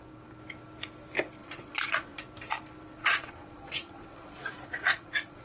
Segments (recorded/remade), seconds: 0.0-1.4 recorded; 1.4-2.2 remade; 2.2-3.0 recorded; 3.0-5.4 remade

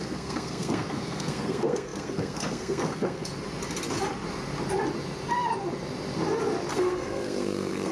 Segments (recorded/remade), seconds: 0.0-3.3 remade; 3.3-6.7 recorded; 6.7-7.9 remade

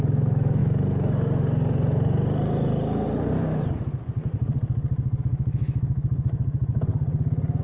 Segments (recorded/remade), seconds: 0.0-0.6 remade; 0.6-5.2 recorded; 5.2-6.9 remade; 6.9-7.6 recorded

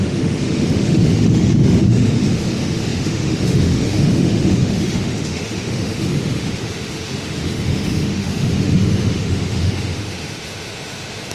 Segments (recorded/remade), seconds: 0.0-11.3 remade